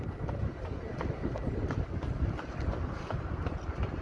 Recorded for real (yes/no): yes